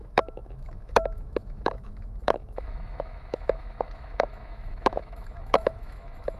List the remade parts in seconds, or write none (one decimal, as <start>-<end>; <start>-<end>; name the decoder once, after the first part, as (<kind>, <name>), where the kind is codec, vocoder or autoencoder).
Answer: 0.0-6.4 (autoencoder, DAC-VAE)